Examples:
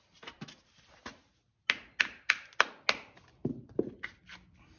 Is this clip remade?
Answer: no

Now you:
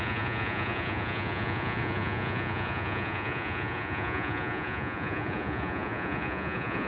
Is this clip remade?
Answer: yes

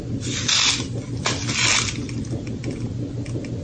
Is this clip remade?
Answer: no